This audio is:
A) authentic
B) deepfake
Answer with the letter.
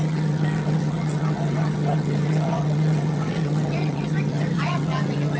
B